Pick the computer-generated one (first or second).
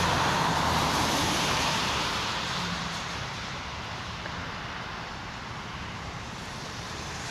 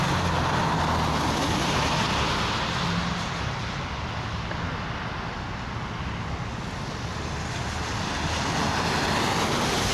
first